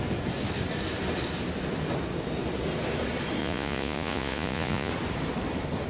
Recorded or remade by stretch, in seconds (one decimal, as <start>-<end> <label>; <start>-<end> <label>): 0.0-3.4 recorded; 3.4-4.9 remade; 4.9-5.9 recorded